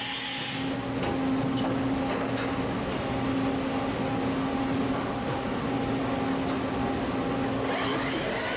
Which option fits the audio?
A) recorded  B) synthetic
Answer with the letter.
A